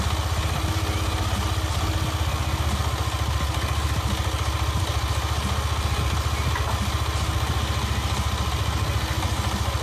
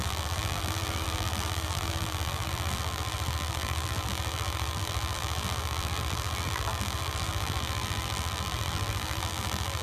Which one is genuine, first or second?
first